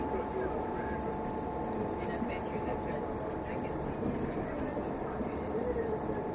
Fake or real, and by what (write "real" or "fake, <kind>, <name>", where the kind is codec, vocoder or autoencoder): real